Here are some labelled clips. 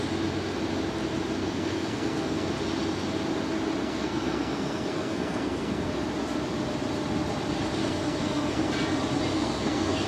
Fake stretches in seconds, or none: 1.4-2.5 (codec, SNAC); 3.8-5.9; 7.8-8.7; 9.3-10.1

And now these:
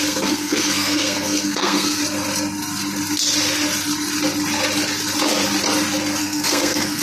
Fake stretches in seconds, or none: 0.0-2.0 (codec, SNAC); 6.2-7.0

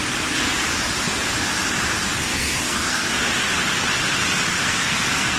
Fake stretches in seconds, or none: 2.3-3.1 (codec, SNAC); 4.6-5.4